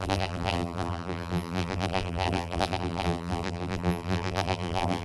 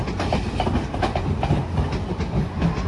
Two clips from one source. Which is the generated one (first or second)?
first